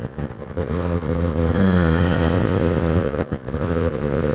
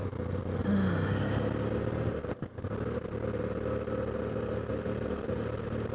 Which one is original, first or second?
second